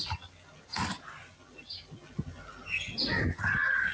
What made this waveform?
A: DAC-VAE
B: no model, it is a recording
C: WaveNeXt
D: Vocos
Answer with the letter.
B